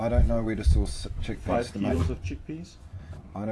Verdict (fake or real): fake